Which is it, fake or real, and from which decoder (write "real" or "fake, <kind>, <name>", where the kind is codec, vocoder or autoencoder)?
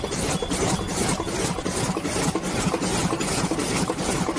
real